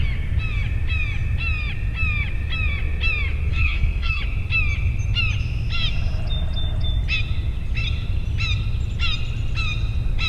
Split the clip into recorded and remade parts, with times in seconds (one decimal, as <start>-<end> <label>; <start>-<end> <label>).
0.0-3.5 recorded; 3.5-4.2 remade; 4.2-10.3 recorded

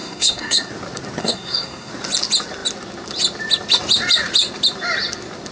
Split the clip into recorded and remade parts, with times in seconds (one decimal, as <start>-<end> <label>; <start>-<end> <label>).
0.0-0.7 remade; 0.7-1.2 recorded; 1.2-1.9 remade; 1.9-5.5 recorded